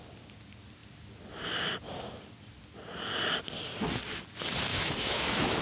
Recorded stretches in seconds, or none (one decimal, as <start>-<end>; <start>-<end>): 0.0-4.7